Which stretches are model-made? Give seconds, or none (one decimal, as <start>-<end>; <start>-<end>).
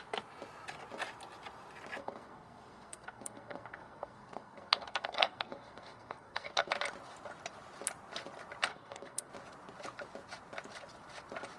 2.0-6.7; 8.7-9.3